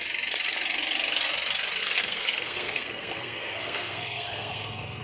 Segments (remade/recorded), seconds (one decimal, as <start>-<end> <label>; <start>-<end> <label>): 0.0-1.8 recorded; 1.8-5.0 remade